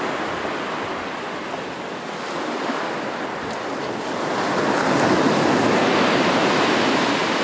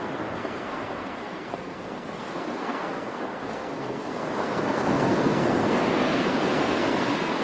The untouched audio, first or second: first